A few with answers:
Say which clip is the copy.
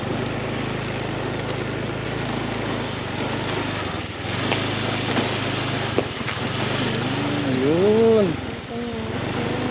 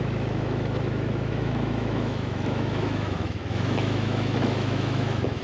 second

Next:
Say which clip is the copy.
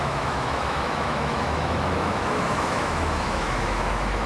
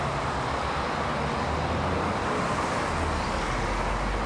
first